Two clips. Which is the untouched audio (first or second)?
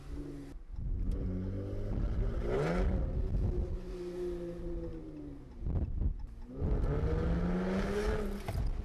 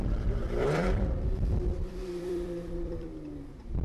first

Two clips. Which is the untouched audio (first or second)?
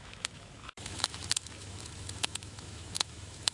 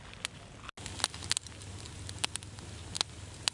second